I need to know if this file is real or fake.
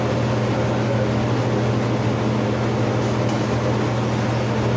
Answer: real